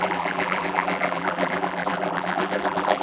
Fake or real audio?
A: fake